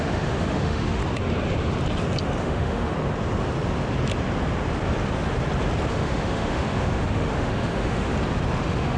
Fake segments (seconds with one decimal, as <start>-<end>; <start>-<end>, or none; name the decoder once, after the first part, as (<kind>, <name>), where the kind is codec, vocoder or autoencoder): 0.0-1.0 (autoencoder, DAC-VAE); 2.4-2.9; 5.9-8.1; 8.6-9.0